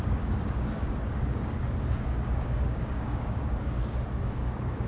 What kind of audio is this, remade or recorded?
remade